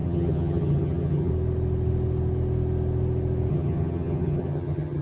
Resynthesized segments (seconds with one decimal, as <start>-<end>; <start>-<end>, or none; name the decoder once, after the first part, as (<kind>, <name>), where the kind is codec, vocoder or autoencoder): 0.0-1.3 (vocoder, HiFi-GAN); 3.5-5.0